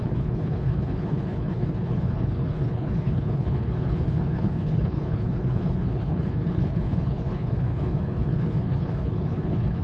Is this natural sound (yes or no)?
no